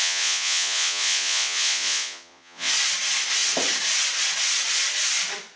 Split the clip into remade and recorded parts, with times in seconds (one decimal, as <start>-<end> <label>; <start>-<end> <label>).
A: 0.0-2.7 remade; 2.7-5.6 recorded